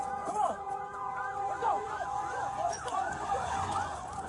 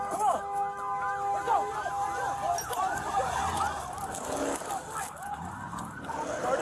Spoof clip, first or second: first